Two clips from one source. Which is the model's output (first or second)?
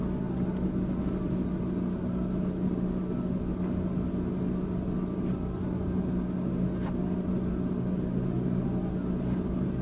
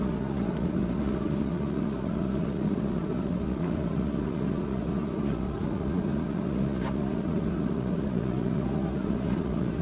second